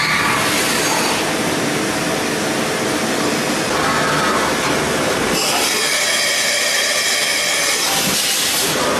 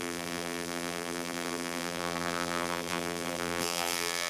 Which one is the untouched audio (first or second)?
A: first